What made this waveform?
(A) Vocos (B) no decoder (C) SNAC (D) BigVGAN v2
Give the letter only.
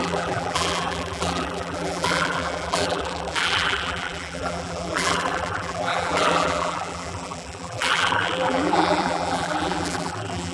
D